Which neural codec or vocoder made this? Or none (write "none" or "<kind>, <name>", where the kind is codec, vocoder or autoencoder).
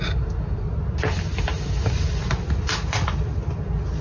none